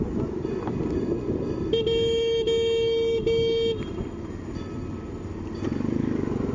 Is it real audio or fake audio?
real